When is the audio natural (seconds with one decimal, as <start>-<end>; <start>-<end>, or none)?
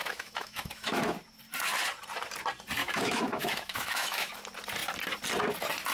1.0-2.8; 4.3-5.9